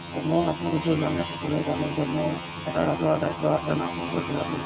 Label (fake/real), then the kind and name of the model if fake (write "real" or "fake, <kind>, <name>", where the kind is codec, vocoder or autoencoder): fake, vocoder, HiFi-GAN